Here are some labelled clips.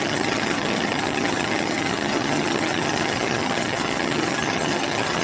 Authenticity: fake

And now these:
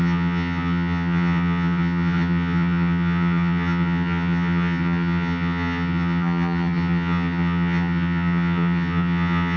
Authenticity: fake